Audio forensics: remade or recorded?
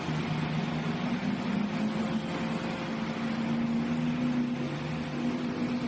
recorded